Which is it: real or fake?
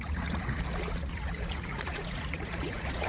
fake